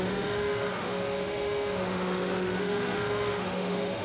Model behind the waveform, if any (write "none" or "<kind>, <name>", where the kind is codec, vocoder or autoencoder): autoencoder, DAC-VAE